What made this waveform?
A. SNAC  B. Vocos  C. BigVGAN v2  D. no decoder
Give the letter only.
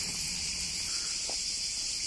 D